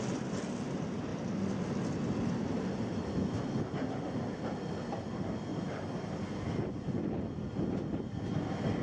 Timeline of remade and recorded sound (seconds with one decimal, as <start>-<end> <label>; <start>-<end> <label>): 0.0-8.8 recorded